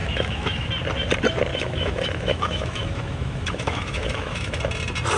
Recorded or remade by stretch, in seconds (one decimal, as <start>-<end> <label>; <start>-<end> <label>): 0.0-0.7 remade; 0.7-1.5 recorded; 1.5-4.6 remade; 4.6-5.2 recorded